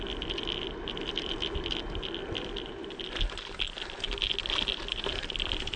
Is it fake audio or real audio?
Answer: real